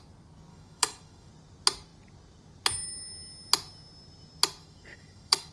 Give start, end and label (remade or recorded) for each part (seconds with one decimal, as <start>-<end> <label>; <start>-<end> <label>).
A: 0.0-0.5 recorded; 0.5-1.3 remade; 1.3-4.6 recorded; 4.6-5.5 remade